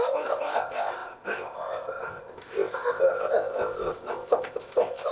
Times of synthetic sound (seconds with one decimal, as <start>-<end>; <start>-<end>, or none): 0.0-5.1